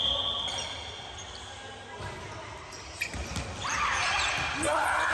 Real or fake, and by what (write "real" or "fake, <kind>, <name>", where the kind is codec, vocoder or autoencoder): real